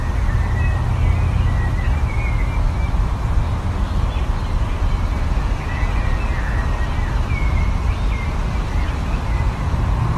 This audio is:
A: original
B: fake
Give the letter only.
A